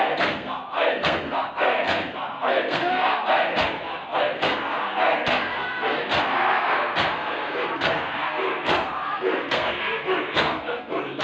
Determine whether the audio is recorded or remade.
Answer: remade